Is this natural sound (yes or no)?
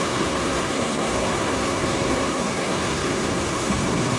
no